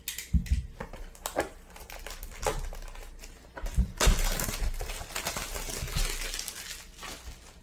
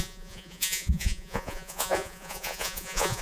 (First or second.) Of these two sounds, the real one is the first